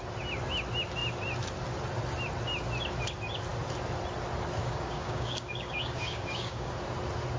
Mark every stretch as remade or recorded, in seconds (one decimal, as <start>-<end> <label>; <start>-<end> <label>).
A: 0.0-4.6 recorded; 4.6-6.7 remade; 6.7-7.4 recorded